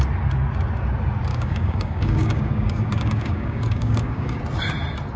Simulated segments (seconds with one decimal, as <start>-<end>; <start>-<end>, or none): 1.3-4.4